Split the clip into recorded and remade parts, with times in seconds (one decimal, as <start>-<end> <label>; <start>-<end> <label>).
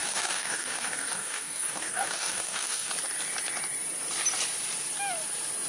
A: 0.0-2.9 remade; 2.9-5.7 recorded